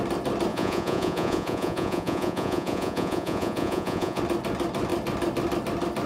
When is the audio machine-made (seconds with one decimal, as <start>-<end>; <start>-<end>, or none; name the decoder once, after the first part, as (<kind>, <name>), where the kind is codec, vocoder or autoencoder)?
0.5-4.2 (vocoder, Vocos)